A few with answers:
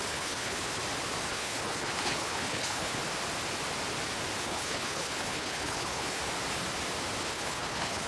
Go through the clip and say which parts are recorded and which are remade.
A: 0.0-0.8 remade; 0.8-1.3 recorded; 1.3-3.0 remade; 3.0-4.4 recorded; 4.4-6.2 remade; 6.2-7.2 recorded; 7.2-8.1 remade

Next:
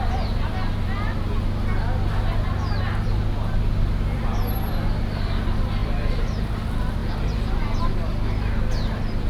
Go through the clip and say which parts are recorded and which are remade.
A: 0.0-9.3 recorded

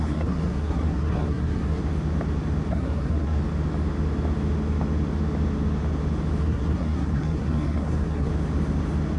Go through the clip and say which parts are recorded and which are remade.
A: 0.0-1.8 remade; 1.8-2.7 recorded; 2.7-3.4 remade; 3.4-6.4 recorded; 6.4-8.3 remade; 8.3-9.2 recorded

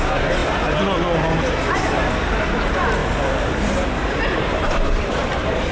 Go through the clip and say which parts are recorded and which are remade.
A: 0.0-3.0 recorded; 3.0-5.7 remade

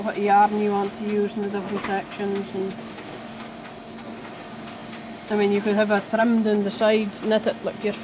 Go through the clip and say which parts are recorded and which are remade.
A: 0.0-8.0 recorded

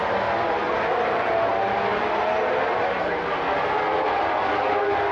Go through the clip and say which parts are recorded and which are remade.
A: 0.0-5.1 recorded